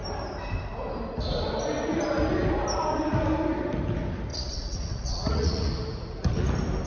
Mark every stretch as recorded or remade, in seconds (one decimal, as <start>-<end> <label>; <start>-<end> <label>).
0.0-4.3 recorded; 4.3-5.7 remade; 5.7-6.9 recorded